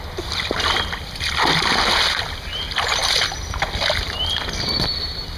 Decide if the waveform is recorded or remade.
recorded